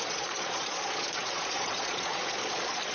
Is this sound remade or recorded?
remade